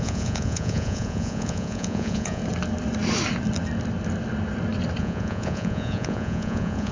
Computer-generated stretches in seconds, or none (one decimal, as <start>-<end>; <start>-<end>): 0.0-2.4; 5.0-6.9